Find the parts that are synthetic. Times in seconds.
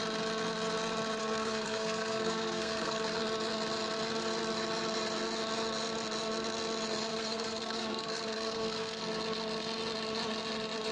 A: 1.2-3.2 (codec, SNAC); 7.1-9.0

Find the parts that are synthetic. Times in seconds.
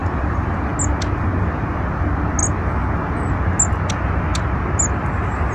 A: 0.0-0.7 (vocoder, BigVGAN v2)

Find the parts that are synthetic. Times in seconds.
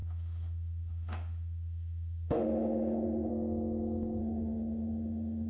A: 0.0-3.3 (autoencoder, DAC-VAE); 4.2-5.5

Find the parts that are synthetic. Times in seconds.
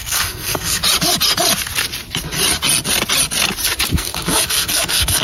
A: 0.0-0.8 (codec, SNAC); 3.9-5.2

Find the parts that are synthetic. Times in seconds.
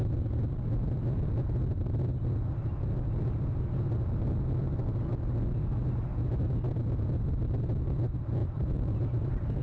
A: 8.4-9.6 (vocoder, BigVGAN v2)